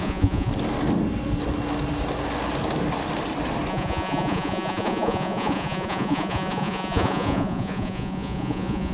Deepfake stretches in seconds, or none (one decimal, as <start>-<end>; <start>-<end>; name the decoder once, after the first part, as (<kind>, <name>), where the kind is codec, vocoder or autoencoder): 0.0-0.5 (vocoder, Vocos); 3.7-8.9